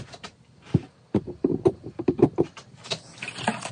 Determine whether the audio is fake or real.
real